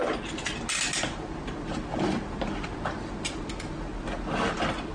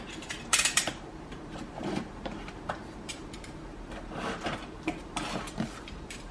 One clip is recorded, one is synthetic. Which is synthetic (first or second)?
second